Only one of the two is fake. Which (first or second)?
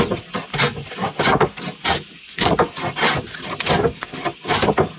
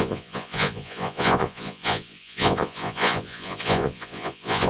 second